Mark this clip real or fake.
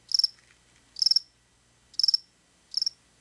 real